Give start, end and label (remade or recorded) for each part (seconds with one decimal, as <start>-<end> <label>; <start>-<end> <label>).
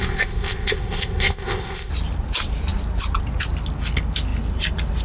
0.0-1.9 remade; 1.9-5.0 recorded